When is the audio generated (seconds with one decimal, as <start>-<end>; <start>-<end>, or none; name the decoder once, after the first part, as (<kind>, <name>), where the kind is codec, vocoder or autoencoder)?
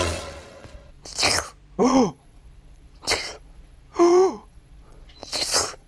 0.0-1.1 (vocoder, Vocos); 1.8-5.9